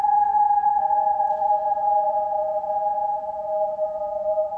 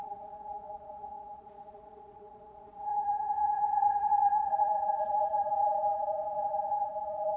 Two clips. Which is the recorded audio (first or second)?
first